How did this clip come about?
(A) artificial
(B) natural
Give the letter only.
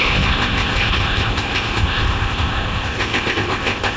A